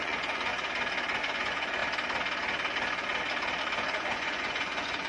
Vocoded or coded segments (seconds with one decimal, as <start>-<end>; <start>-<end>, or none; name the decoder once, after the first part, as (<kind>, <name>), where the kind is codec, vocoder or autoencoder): 0.0-0.5 (vocoder, Vocos); 1.2-1.8; 3.6-5.1